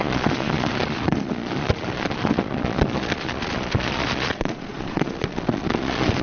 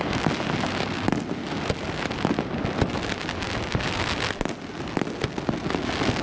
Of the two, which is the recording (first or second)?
second